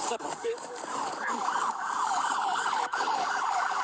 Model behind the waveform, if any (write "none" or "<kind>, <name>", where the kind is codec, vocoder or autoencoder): codec, DAC